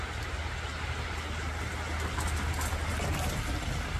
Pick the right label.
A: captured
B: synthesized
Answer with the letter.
A